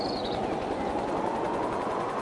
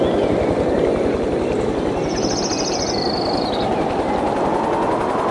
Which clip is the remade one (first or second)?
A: first